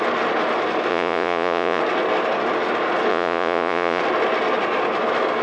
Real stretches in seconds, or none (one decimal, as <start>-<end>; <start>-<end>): 0.0-0.9; 1.8-3.1; 4.0-5.4